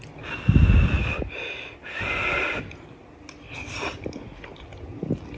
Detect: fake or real real